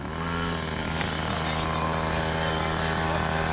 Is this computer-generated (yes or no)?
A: no